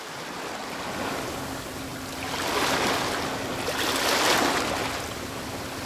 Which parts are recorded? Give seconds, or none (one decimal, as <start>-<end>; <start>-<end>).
0.0-5.9

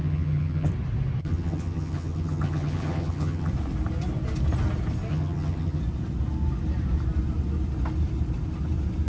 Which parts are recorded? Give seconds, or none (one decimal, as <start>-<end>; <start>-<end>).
0.7-1.2; 3.5-5.1; 5.8-9.1

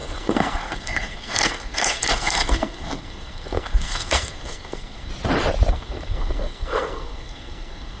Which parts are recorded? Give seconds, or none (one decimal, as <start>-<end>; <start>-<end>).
5.1-5.7

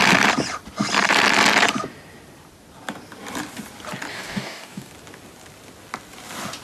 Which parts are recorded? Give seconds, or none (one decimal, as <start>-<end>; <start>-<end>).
0.0-4.1; 4.9-6.6

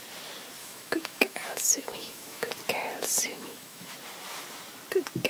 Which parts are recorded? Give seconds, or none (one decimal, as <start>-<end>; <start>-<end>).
0.0-0.6; 2.5-3.3; 3.9-5.3

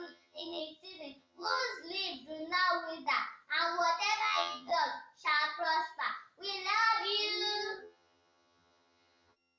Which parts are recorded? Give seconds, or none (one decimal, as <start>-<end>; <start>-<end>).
0.6-1.2; 1.6-4.2; 4.7-7.8